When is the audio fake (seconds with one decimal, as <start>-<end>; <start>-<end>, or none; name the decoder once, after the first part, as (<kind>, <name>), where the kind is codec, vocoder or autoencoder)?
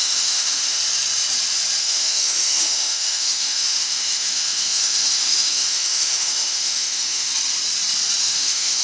0.0-0.8 (autoencoder, DAC-VAE); 1.8-7.3; 8.2-8.8